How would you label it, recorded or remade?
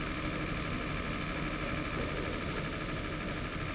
recorded